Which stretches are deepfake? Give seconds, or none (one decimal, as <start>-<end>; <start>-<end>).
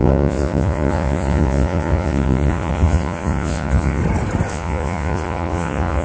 0.0-4.0; 4.5-6.0